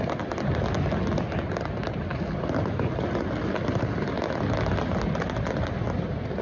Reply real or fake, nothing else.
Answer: real